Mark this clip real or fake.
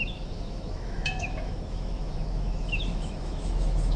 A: fake